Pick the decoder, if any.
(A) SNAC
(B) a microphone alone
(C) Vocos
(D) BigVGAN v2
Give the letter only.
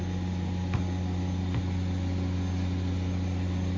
B